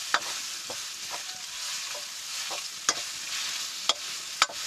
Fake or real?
real